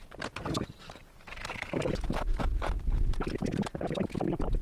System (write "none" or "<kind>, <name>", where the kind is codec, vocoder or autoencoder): none